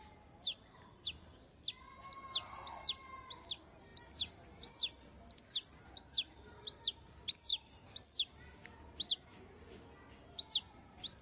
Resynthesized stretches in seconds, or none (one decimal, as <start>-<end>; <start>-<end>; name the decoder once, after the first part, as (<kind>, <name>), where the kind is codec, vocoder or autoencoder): none